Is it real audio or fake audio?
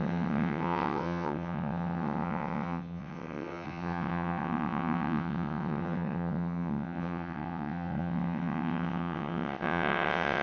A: fake